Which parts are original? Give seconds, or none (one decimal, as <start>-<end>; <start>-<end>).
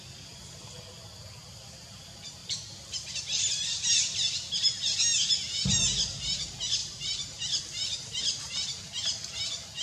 0.0-6.8; 7.6-9.8